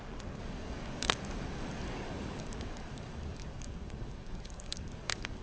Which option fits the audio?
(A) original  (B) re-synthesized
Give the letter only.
B